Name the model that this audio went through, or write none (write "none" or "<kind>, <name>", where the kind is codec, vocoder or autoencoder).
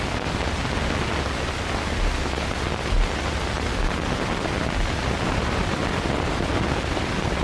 none